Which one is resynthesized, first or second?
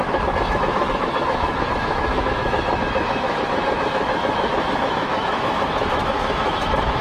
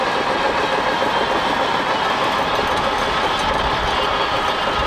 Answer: first